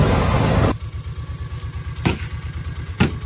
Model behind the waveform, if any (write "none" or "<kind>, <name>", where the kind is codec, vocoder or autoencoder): none